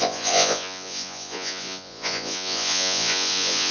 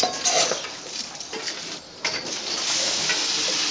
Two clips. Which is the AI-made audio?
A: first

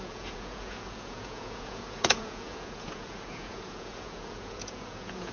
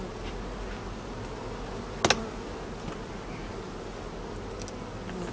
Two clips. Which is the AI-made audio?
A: first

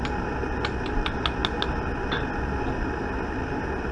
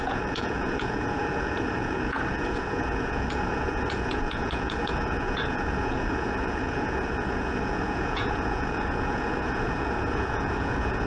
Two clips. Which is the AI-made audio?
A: second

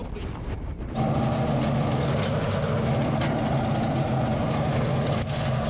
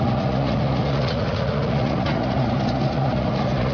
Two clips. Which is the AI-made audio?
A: second